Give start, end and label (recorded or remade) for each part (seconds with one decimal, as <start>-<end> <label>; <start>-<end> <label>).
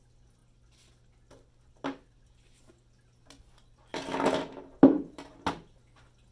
0.0-6.3 recorded